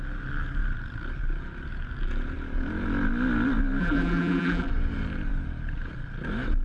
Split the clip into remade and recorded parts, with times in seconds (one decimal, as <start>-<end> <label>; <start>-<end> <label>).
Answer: 0.0-3.8 recorded; 3.8-4.7 remade; 4.7-6.6 recorded